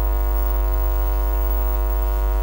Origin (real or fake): fake